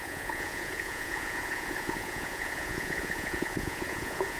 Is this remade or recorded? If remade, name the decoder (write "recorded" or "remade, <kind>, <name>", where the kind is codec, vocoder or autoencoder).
remade, vocoder, Vocos